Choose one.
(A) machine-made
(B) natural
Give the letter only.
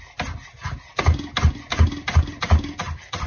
B